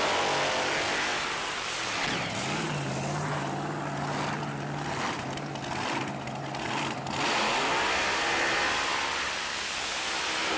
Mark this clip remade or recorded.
recorded